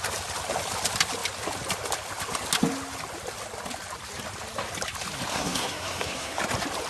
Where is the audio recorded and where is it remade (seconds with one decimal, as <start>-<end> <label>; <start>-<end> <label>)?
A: 0.0-5.3 recorded; 5.3-6.4 remade; 6.4-6.9 recorded